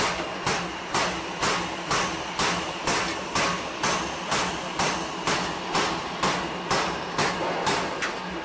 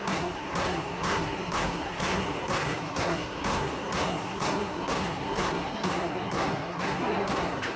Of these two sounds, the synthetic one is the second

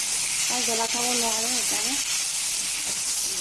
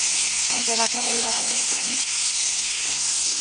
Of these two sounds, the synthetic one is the second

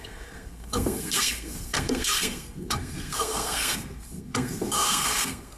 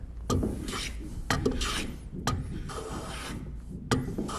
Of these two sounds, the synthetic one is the first